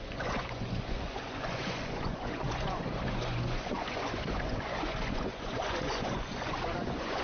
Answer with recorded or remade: remade